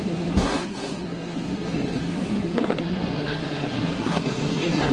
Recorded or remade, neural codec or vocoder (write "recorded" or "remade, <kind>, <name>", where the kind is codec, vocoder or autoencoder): remade, codec, SNAC